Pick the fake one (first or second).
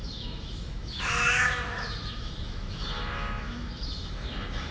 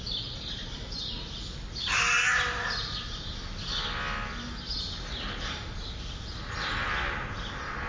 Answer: first